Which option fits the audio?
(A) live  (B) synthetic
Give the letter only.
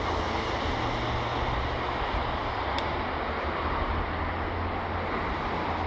A